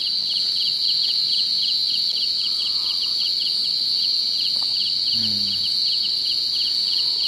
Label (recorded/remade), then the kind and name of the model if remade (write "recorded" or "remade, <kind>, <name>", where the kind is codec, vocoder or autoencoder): recorded